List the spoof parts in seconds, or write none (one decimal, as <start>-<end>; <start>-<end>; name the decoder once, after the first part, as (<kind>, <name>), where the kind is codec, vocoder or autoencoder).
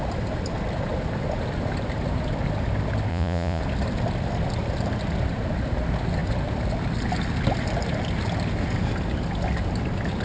3.1-3.6 (vocoder, Vocos)